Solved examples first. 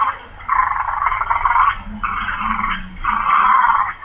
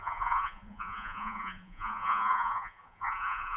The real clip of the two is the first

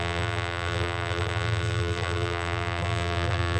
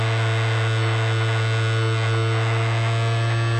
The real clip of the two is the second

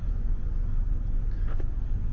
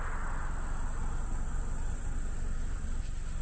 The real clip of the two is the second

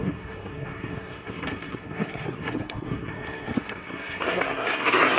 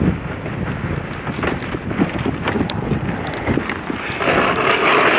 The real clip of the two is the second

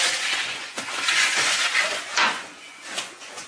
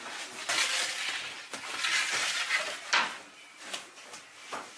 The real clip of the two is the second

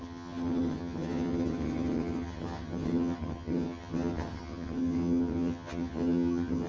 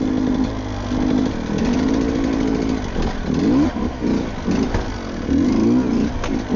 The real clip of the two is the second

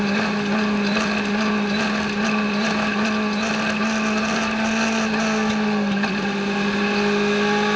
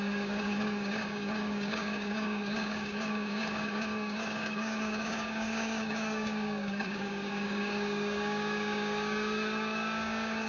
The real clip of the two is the first